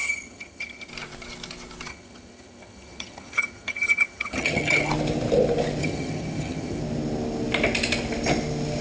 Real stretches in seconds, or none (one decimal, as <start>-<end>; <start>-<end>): 0.9-1.9; 4.9-5.8; 6.8-8.8